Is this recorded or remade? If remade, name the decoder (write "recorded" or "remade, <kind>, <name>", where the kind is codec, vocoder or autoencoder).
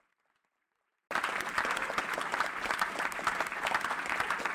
recorded